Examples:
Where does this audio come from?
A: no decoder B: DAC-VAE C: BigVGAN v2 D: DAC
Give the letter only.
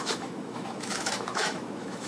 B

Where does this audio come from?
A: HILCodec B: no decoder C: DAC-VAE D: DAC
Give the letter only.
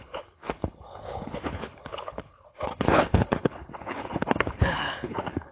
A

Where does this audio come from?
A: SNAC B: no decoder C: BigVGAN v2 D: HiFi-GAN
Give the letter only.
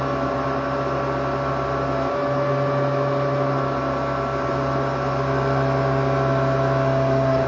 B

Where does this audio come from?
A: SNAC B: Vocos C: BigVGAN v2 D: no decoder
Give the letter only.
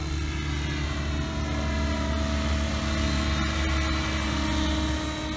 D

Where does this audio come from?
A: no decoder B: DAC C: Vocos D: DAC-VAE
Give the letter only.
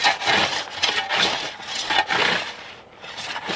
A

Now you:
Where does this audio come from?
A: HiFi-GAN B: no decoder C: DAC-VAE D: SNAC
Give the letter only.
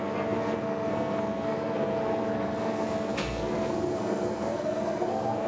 D